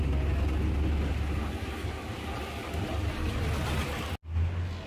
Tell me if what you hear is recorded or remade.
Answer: recorded